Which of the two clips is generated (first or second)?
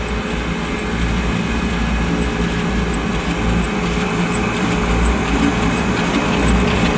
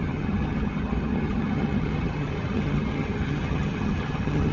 second